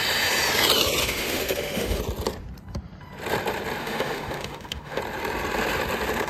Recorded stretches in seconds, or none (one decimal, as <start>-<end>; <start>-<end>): 0.0-1.0; 2.0-3.8; 5.0-6.3